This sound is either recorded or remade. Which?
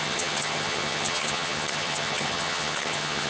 remade